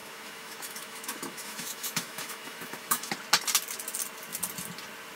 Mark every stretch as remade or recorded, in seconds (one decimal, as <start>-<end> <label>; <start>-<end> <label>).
0.0-3.1 remade; 3.1-5.2 recorded